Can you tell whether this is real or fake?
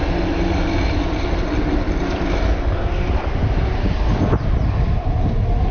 real